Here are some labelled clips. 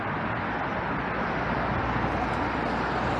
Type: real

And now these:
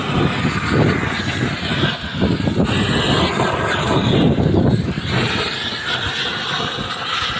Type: real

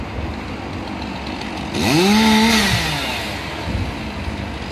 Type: real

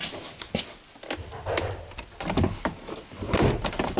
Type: real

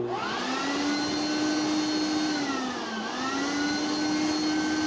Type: real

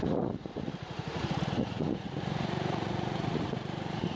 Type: fake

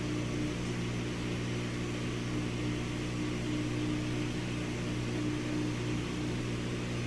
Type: real